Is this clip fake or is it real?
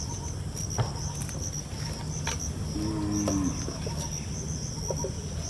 real